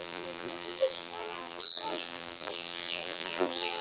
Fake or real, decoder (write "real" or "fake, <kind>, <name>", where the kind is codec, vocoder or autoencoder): fake, vocoder, BigVGAN v2